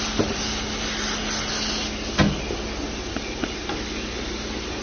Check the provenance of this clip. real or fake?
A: real